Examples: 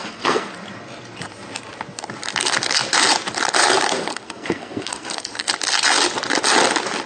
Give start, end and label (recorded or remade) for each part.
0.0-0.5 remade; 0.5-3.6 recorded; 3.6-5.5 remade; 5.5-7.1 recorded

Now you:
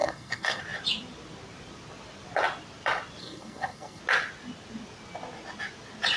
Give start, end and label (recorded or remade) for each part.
0.0-0.6 remade; 0.6-3.2 recorded; 3.2-4.0 remade; 4.0-6.2 recorded

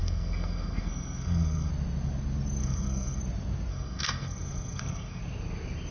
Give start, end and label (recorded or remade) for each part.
0.0-1.7 remade; 1.7-2.6 recorded; 2.6-3.2 remade; 3.2-3.7 recorded; 3.7-5.2 remade; 5.2-5.9 recorded

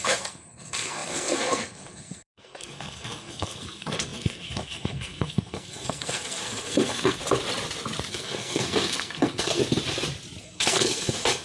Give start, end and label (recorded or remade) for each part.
0.0-7.2 remade; 7.2-8.1 recorded; 8.1-9.6 remade; 9.6-10.4 recorded; 10.4-11.4 remade

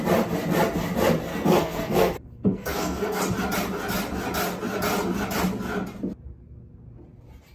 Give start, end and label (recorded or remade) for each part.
0.0-1.3 recorded; 1.3-3.2 remade; 3.2-7.5 recorded

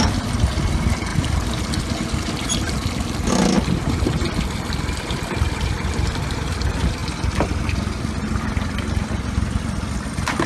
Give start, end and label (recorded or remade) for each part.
0.0-10.5 recorded

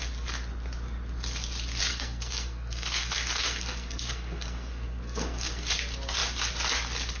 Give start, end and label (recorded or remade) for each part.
0.0-1.9 recorded; 1.9-5.7 remade; 5.7-7.2 recorded